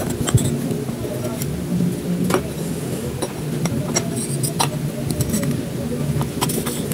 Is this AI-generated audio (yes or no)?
no